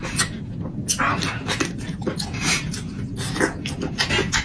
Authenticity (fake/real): real